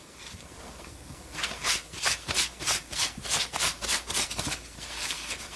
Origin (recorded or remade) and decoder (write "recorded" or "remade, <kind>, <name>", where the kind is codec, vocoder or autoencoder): remade, codec, SNAC